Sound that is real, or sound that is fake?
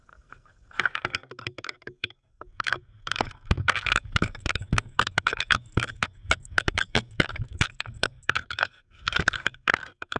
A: fake